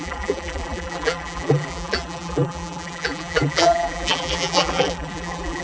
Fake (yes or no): yes